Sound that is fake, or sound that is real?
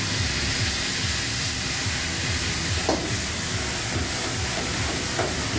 real